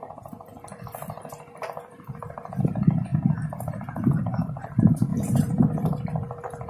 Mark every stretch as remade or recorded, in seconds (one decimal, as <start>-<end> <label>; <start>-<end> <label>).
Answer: 0.0-0.5 remade; 0.5-1.6 recorded; 1.6-3.1 remade; 3.1-3.7 recorded; 3.7-6.7 remade